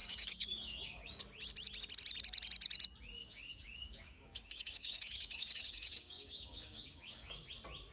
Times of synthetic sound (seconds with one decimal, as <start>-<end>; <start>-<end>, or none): 0.0-1.2; 3.2-7.5